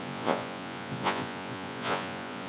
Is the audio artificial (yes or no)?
yes